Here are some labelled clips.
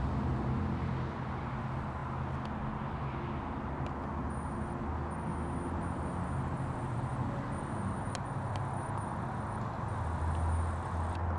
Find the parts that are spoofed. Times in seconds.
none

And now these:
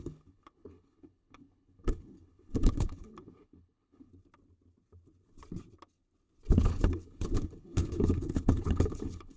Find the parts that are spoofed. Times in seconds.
0.0-4.1; 6.6-9.4

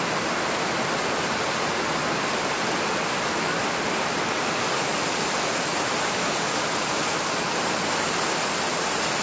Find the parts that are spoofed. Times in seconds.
none

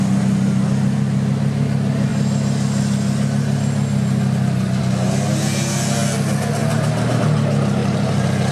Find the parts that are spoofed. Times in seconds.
6.6-7.2; 7.8-8.5

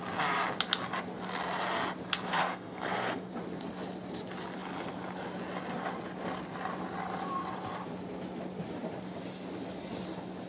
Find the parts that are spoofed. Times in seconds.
2.3-3.3